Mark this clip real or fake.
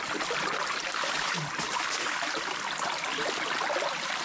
real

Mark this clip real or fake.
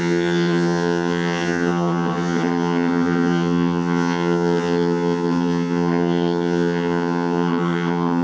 fake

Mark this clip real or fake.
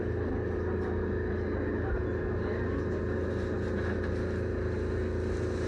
real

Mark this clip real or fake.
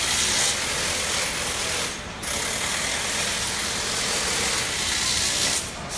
real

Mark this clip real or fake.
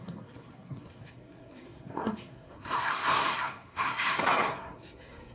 fake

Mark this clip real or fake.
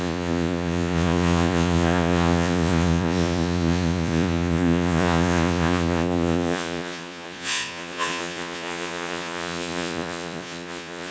fake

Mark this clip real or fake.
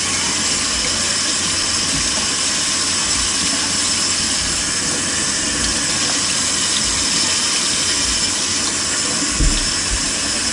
real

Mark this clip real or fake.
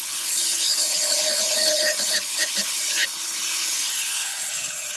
fake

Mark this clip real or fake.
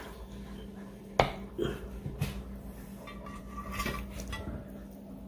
real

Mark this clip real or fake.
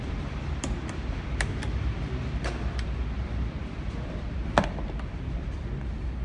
fake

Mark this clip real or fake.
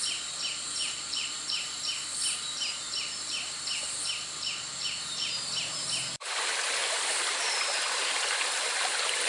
fake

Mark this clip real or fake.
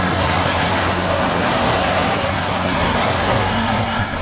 fake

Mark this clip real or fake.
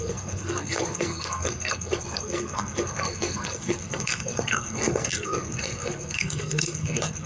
fake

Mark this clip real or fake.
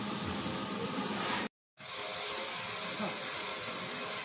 real